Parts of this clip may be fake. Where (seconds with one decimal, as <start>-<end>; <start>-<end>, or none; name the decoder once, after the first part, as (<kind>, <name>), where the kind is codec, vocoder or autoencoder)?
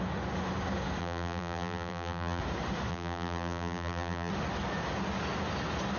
1.0-2.4 (vocoder, BigVGAN v2); 2.9-4.3